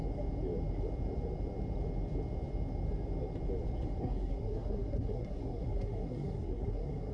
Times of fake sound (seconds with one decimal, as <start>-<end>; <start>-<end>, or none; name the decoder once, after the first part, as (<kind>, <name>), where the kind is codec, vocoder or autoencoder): 4.0-7.1 (codec, SNAC)